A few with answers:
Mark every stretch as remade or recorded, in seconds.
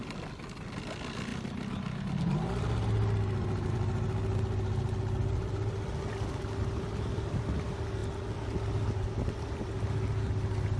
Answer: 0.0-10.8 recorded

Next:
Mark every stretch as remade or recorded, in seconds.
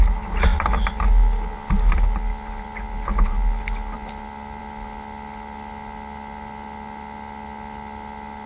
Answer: 0.0-8.5 recorded